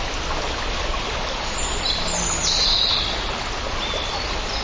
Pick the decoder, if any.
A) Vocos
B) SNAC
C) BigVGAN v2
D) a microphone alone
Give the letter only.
D